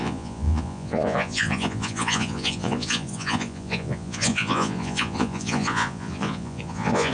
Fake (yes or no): yes